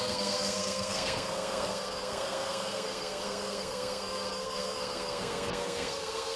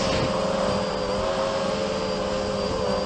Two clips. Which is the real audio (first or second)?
second